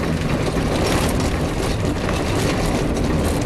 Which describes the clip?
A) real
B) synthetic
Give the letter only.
A